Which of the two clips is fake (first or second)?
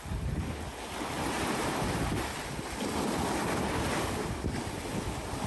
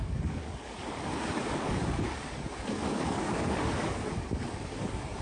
second